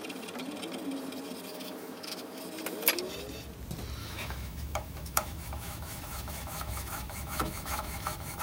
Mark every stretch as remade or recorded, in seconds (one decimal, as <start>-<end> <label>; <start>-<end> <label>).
0.0-1.5 recorded; 1.5-2.4 remade; 2.4-4.0 recorded; 4.0-8.4 remade